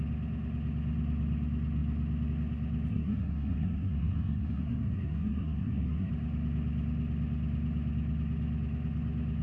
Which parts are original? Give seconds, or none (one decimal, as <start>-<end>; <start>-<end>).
0.0-2.9; 6.1-9.4